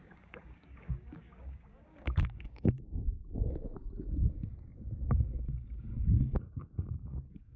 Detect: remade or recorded remade